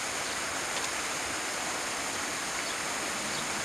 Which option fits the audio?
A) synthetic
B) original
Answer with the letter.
B